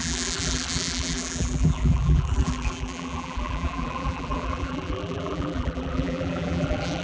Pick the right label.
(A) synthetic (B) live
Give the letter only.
A